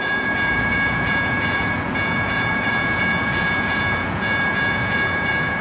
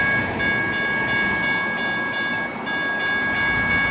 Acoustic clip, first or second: second